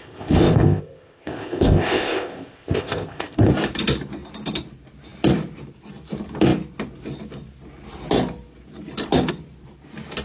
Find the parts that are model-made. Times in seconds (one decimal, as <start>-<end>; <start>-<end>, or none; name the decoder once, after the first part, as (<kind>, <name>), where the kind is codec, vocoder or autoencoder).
0.0-3.5 (codec, ZipCodec)